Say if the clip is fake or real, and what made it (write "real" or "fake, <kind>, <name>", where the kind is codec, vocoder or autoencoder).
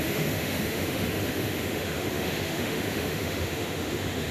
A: fake, autoencoder, DAC-VAE